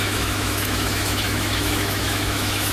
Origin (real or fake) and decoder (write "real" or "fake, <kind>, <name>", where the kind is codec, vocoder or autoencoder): fake, autoencoder, DAC-VAE